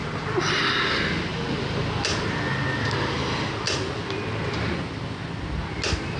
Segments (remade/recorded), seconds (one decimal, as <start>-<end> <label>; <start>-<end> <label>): 0.0-6.2 recorded